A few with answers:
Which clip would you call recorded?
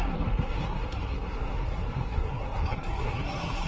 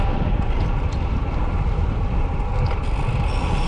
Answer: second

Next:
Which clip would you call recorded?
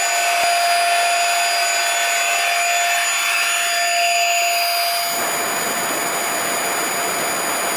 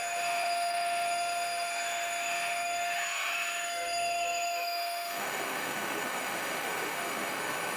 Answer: first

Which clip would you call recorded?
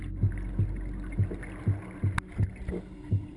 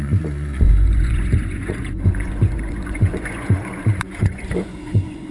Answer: first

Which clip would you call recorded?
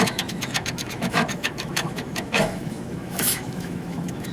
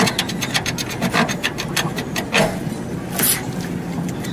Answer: second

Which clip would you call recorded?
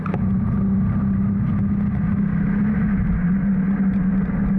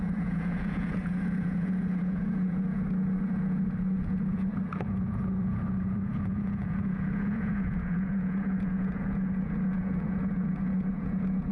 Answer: first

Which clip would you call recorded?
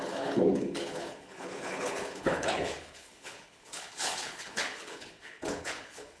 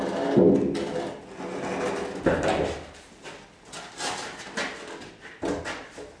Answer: second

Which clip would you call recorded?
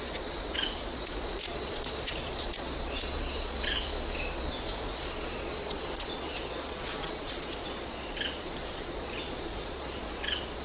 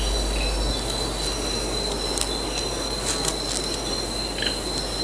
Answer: second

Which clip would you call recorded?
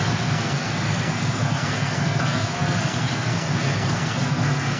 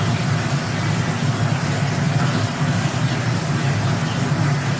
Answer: second